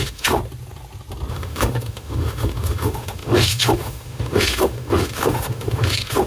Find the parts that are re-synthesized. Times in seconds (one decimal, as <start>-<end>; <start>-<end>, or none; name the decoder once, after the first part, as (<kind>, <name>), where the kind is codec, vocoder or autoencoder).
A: 0.0-0.4 (autoencoder, DAC-VAE); 1.3-6.3